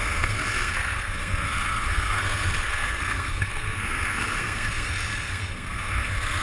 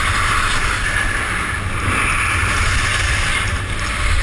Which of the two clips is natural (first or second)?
second